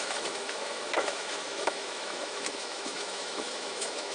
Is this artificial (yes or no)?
yes